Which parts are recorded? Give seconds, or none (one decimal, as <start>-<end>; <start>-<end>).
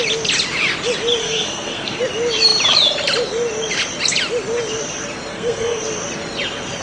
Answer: 0.0-1.2; 2.0-5.3; 5.8-6.8